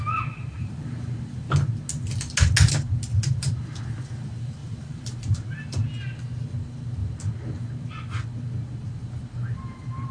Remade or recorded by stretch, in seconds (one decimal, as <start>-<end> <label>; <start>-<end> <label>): 0.0-3.1 recorded; 3.1-3.8 remade; 3.8-4.6 recorded; 4.6-5.6 remade; 5.6-10.1 recorded